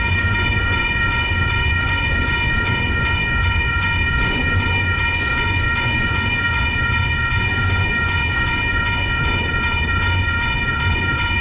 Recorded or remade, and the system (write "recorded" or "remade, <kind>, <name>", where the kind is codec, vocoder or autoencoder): remade, vocoder, Vocos